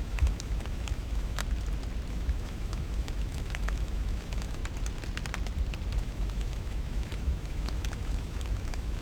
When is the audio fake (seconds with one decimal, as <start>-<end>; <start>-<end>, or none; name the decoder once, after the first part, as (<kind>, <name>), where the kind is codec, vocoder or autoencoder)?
0.0-1.4 (autoencoder, DAC-VAE); 2.1-4.6; 6.0-9.0